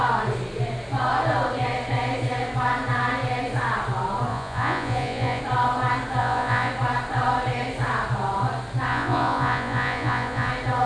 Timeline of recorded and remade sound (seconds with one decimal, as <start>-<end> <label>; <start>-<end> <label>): 0.0-4.3 recorded; 4.3-5.4 remade; 5.4-6.2 recorded; 6.2-6.7 remade; 6.7-8.9 recorded; 8.9-10.5 remade; 10.5-10.9 recorded

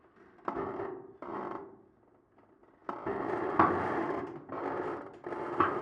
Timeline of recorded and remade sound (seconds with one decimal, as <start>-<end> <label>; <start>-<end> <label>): 0.0-5.8 recorded

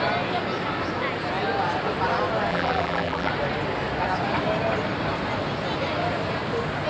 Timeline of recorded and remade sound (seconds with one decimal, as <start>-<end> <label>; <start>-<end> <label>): 0.0-2.5 recorded; 2.5-3.3 remade; 3.3-6.9 recorded

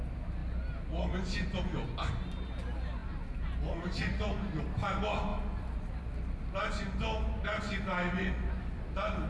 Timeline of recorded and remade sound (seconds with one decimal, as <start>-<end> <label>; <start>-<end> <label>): 0.0-9.3 recorded

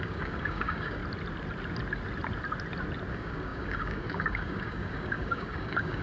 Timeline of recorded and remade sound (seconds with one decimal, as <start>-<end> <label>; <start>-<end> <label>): 0.0-1.0 remade; 1.0-3.1 recorded; 3.1-6.0 remade

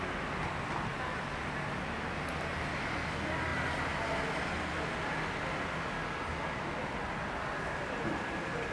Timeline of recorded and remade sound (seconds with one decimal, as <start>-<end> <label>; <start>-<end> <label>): 0.0-8.7 recorded

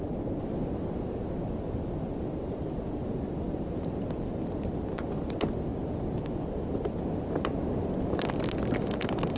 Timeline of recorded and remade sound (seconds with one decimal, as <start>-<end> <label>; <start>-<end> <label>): 0.0-9.4 recorded